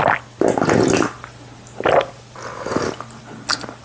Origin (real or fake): real